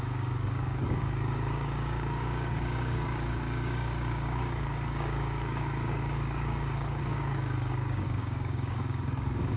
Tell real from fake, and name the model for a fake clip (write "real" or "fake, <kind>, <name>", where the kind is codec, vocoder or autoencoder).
fake, codec, DAC